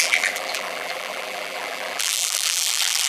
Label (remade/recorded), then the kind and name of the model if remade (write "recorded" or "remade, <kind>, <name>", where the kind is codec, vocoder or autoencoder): remade, vocoder, BigVGAN v2